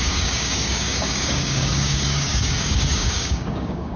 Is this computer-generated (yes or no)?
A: yes